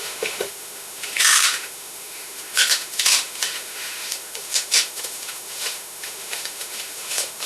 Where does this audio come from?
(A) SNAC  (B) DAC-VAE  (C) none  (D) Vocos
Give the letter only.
B